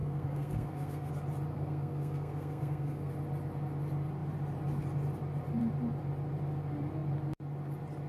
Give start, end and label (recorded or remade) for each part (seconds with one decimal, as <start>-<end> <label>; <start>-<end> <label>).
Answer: 0.0-1.1 remade; 1.1-1.5 recorded; 1.5-3.1 remade; 3.1-8.1 recorded